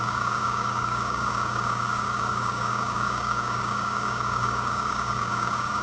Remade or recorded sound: remade